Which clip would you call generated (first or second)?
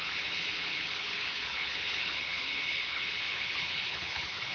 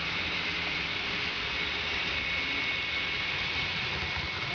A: first